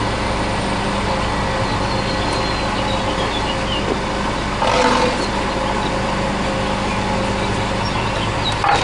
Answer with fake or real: real